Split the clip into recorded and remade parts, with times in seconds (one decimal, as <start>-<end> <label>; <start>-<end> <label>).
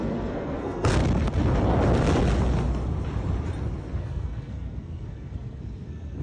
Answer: 0.0-1.0 remade; 1.0-4.0 recorded; 4.0-6.2 remade